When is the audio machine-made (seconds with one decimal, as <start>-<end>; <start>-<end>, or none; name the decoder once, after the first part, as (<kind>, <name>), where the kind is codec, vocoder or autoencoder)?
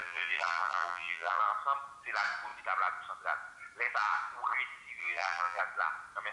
0.0-1.4 (vocoder, BigVGAN v2); 5.0-5.6